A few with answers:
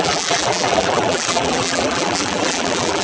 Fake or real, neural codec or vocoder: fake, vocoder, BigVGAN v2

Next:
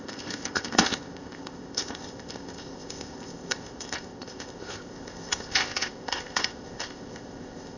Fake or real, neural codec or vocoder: fake, codec, ZipCodec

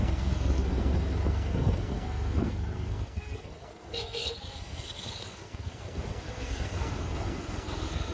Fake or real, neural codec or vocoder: fake, codec, SNAC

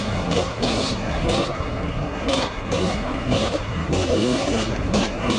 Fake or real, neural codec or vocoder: fake, codec, SNAC